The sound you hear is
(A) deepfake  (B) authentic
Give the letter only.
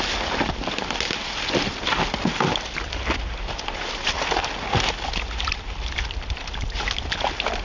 B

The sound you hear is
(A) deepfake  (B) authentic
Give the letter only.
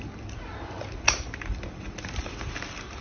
B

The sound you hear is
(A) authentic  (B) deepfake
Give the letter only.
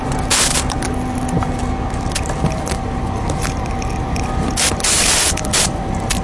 A